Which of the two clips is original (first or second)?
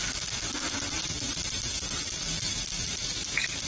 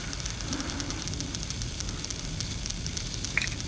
first